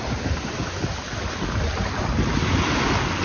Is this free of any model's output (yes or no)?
yes